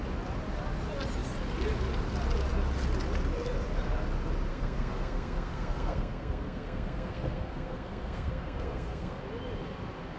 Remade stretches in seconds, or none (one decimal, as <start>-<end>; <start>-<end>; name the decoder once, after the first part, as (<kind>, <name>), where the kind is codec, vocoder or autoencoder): 4.5-9.2 (codec, SNAC)